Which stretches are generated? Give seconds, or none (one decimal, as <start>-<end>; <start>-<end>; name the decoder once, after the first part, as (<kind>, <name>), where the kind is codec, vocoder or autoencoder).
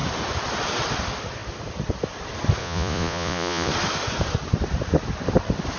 2.6-3.7 (vocoder, Vocos)